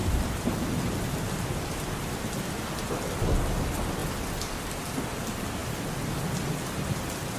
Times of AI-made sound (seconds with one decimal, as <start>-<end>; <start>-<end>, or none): 0.0-1.7; 4.0-4.8